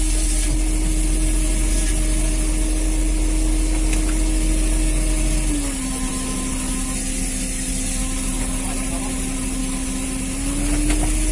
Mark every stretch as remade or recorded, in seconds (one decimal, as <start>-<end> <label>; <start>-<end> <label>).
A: 0.0-11.3 recorded